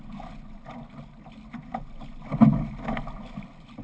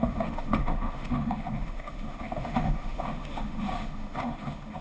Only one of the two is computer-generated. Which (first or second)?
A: second